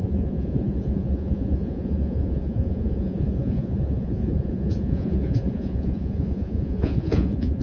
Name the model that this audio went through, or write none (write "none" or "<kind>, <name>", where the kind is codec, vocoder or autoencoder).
vocoder, Vocos